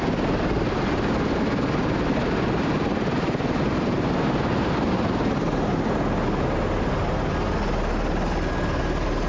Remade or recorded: recorded